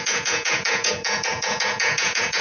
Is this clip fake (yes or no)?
yes